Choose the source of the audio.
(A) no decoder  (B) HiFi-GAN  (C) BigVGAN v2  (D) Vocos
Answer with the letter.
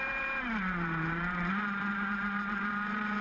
C